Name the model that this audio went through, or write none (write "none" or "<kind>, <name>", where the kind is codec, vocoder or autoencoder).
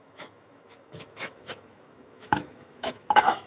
autoencoder, DAC-VAE